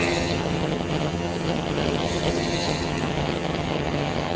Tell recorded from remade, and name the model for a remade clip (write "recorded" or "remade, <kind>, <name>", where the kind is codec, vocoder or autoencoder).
remade, vocoder, HiFi-GAN